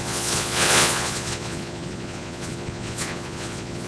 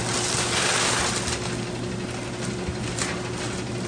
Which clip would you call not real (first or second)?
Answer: first